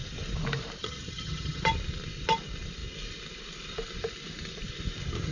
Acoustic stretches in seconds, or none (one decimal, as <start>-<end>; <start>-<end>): 0.0-0.8; 1.6-5.3